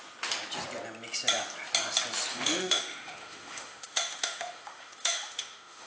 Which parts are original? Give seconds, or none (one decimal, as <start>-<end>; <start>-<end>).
0.0-2.3